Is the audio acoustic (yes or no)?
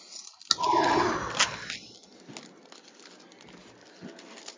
yes